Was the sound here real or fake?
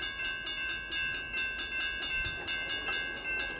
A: real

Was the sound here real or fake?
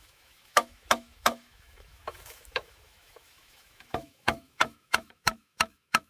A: fake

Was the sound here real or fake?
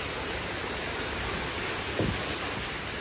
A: fake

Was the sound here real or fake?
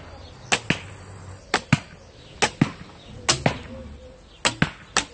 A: real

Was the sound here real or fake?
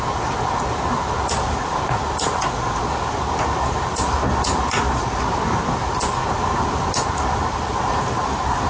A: real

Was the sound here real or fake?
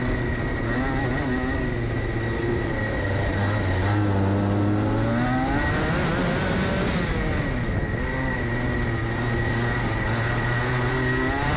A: real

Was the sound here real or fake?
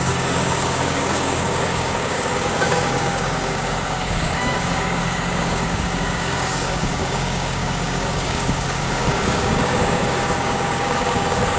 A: fake